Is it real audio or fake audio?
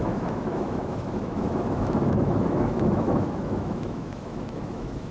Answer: fake